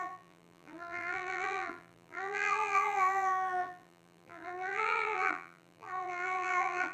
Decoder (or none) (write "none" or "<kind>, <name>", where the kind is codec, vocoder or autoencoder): vocoder, BigVGAN v2